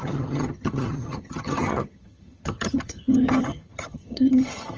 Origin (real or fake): fake